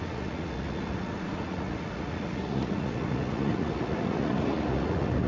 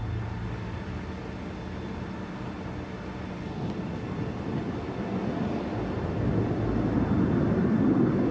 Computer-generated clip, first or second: first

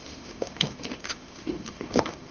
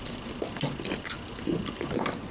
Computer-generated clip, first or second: first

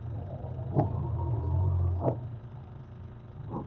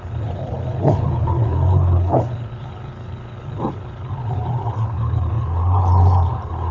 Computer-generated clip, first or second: second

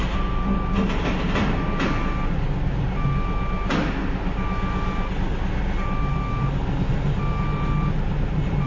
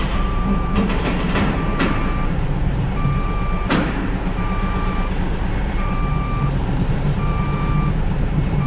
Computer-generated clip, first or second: second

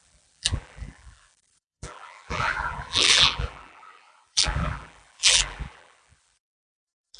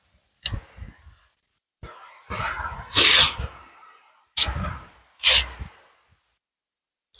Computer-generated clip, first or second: first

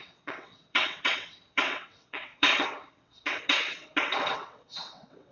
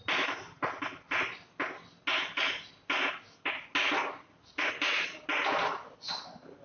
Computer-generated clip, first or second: first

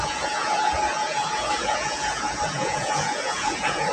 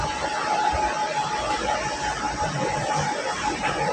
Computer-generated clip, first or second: first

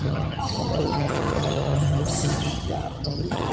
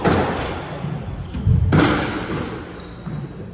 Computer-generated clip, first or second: first